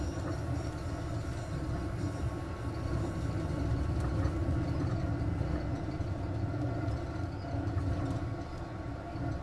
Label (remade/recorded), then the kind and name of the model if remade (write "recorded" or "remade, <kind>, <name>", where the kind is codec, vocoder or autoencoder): recorded